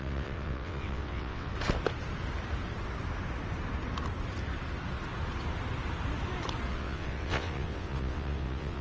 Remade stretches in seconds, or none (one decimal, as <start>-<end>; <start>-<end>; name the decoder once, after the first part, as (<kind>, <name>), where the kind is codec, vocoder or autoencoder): 0.0-1.5 (vocoder, WaveNeXt); 6.7-8.8